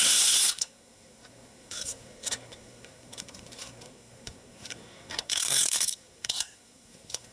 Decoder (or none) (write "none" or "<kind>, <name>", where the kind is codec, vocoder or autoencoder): codec, SNAC